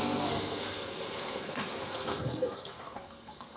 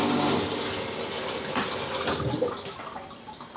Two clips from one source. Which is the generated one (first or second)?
first